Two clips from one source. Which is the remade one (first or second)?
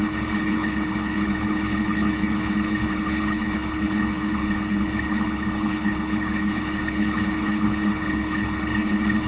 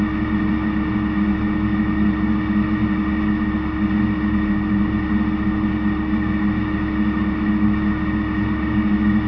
first